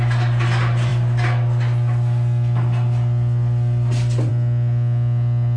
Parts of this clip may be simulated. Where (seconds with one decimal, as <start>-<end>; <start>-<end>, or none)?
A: none